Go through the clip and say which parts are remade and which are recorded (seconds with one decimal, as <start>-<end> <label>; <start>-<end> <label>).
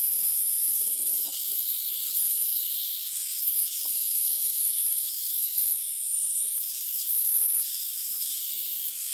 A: 0.0-9.1 remade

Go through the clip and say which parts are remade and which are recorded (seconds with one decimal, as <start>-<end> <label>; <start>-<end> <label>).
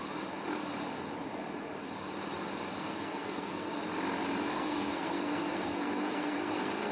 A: 0.0-2.8 recorded; 2.8-3.8 remade; 3.8-4.5 recorded; 4.5-6.9 remade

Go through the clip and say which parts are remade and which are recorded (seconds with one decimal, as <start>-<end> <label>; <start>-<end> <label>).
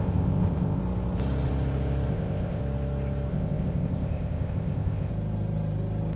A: 0.0-0.8 remade; 0.8-2.1 recorded; 2.1-2.6 remade; 2.6-3.3 recorded; 3.3-5.1 remade; 5.1-6.2 recorded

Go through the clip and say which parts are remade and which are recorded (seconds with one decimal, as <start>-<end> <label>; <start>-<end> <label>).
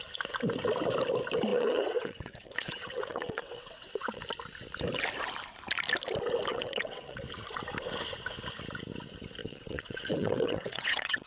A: 0.0-1.5 recorded; 1.5-4.2 remade; 4.2-6.5 recorded; 6.5-7.2 remade; 7.2-9.4 recorded; 9.4-11.3 remade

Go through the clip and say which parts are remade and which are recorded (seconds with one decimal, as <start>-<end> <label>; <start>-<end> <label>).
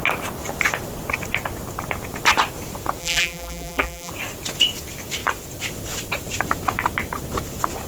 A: 0.0-3.0 recorded; 3.0-4.1 remade; 4.1-7.9 recorded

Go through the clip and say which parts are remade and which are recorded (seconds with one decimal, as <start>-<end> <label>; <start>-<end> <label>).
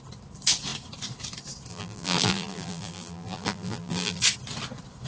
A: 0.0-1.7 recorded; 1.7-4.2 remade; 4.2-5.1 recorded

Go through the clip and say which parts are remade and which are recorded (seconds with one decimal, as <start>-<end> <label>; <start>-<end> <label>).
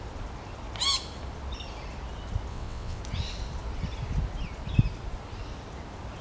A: 0.0-2.5 recorded; 2.5-3.0 remade; 3.0-6.2 recorded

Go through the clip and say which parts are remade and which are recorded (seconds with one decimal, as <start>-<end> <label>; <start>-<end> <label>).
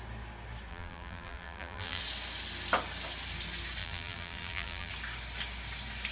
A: 0.0-0.7 recorded; 0.7-2.0 remade; 2.0-3.8 recorded; 3.8-4.9 remade; 4.9-6.1 recorded